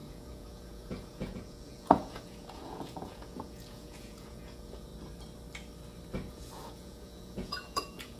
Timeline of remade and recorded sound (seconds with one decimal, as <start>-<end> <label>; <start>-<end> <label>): 0.0-4.9 remade; 4.9-6.3 recorded; 6.3-8.2 remade